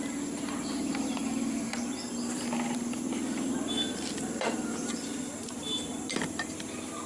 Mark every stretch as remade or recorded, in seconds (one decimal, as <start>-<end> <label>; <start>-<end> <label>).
0.0-7.1 remade